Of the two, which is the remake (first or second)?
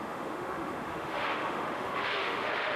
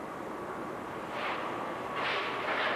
first